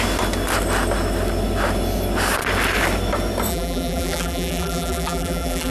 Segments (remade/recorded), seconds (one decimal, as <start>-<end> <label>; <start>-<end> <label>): 0.0-3.5 recorded; 3.5-5.7 remade